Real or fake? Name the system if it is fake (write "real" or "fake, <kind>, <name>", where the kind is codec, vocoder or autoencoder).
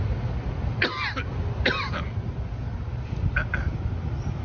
real